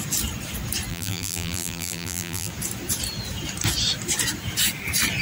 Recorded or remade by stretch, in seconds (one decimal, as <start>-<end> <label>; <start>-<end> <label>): 0.0-0.9 recorded; 0.9-2.5 remade; 2.5-5.2 recorded